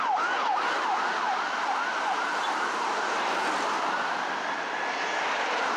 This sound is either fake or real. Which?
real